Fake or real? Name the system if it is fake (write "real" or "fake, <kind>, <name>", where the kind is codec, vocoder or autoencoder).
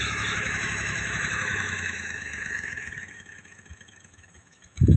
fake, autoencoder, DAC-VAE